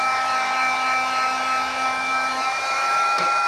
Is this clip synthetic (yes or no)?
yes